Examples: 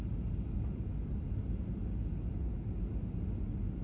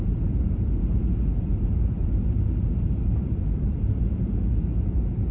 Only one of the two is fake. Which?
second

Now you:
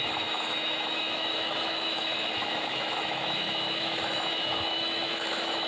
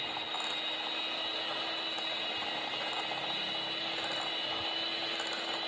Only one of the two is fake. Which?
first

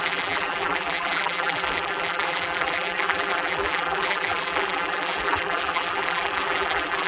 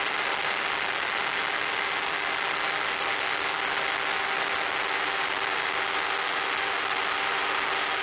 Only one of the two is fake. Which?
first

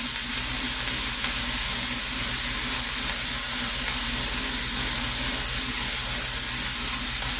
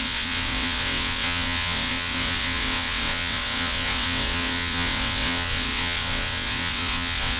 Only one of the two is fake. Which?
second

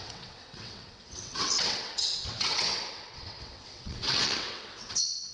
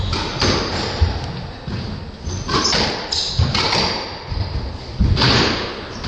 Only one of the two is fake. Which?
first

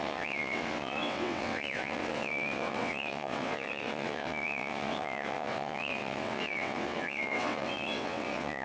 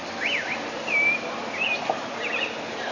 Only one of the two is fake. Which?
first